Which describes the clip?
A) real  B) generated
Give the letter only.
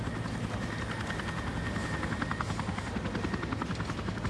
A